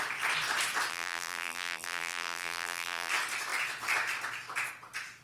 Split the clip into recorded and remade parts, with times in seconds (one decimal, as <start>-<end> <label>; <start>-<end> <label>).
0.0-0.9 recorded; 0.9-3.1 remade; 3.1-5.2 recorded